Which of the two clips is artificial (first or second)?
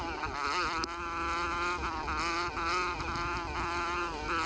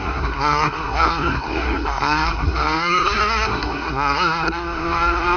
second